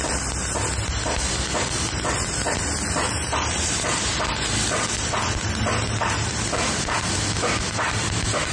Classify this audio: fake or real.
fake